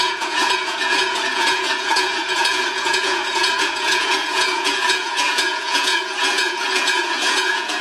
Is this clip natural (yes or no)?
no